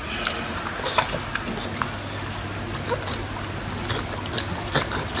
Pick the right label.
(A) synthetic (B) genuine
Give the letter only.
B